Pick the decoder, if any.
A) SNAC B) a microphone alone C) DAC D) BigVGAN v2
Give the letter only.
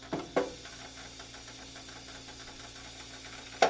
B